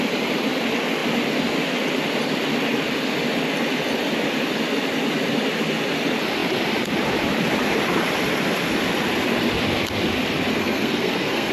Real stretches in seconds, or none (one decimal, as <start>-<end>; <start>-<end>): 0.0-10.5

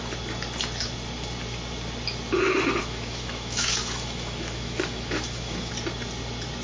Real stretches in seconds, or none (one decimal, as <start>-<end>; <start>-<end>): 0.0-2.8; 5.7-6.6

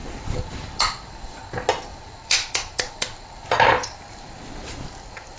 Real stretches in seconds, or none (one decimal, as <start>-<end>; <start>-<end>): 1.1-1.9; 5.0-5.4